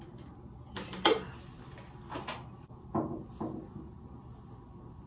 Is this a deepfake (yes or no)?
no